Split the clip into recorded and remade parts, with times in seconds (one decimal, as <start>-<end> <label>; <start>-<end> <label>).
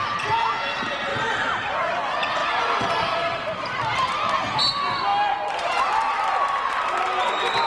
0.0-1.1 recorded; 1.1-1.7 remade; 1.7-2.4 recorded; 2.4-4.1 remade; 4.1-5.1 recorded; 5.1-7.2 remade; 7.2-7.7 recorded